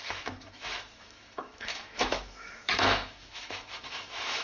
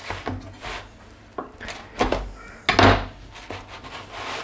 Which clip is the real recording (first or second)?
second